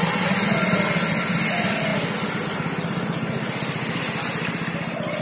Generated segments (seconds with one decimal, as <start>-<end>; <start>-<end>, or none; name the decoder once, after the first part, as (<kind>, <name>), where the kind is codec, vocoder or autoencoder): none

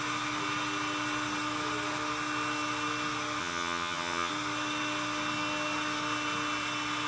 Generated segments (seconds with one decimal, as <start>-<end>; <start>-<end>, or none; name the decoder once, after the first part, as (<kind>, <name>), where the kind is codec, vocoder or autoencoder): 3.4-4.3 (vocoder, HiFi-GAN)

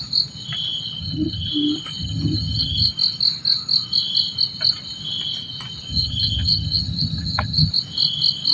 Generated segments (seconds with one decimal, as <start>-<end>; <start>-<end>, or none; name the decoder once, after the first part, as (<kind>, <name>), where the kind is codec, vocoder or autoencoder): 1.0-1.5 (vocoder, HiFi-GAN); 2.0-2.9; 5.9-7.7

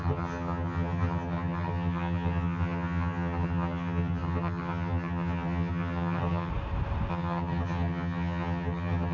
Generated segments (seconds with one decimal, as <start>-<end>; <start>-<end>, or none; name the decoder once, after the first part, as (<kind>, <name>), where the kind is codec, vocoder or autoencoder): 0.0-6.5 (vocoder, HiFi-GAN); 7.1-9.1

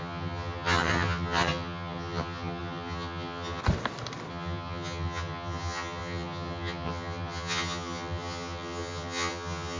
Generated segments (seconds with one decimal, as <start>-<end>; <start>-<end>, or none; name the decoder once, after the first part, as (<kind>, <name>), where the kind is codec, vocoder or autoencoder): 0.0-3.6 (vocoder, HiFi-GAN); 4.3-9.8

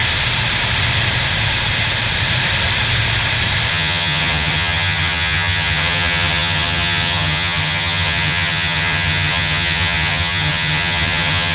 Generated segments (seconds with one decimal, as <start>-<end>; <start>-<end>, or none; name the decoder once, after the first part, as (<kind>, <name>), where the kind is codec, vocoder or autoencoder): 3.7-11.5 (vocoder, HiFi-GAN)

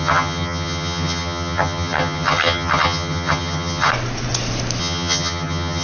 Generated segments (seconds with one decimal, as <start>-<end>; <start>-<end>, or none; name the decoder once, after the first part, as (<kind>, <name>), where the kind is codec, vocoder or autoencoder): 0.0-3.9 (vocoder, HiFi-GAN); 4.8-5.8

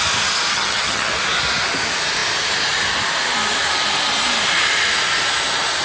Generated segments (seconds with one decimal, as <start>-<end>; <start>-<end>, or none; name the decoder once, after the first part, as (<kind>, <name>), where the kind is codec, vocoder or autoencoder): 0.5-1.1 (vocoder, HiFi-GAN)